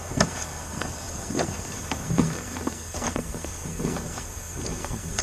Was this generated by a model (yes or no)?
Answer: yes